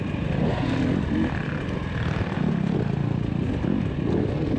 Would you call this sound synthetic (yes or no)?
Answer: no